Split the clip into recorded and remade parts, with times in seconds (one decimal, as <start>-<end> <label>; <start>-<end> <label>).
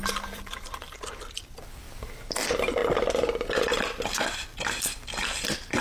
0.0-2.8 remade; 2.8-4.8 recorded; 4.8-5.8 remade